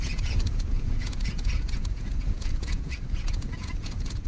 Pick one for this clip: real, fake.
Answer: fake